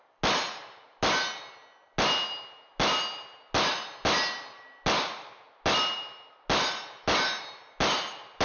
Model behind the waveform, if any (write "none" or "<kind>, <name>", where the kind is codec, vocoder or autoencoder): none